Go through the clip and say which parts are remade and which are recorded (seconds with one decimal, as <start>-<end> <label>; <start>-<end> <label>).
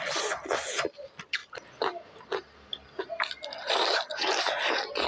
0.0-5.1 recorded